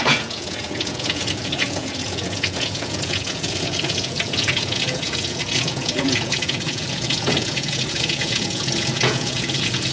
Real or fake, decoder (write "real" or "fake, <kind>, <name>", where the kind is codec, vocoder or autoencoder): fake, vocoder, Vocos